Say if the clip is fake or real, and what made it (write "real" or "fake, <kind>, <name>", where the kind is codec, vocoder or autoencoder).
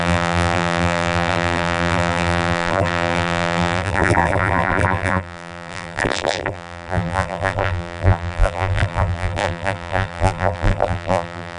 fake, vocoder, BigVGAN v2